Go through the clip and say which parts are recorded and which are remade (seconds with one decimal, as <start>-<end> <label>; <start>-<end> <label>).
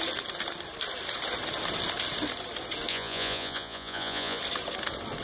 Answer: 0.0-2.9 recorded; 2.9-4.4 remade; 4.4-5.2 recorded